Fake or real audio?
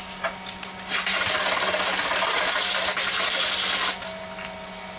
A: real